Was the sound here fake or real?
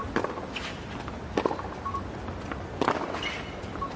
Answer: real